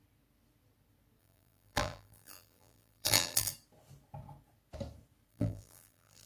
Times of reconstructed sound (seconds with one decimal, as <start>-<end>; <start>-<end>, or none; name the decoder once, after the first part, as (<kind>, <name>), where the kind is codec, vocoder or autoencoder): 1.2-3.5 (vocoder, BigVGAN v2); 5.3-6.3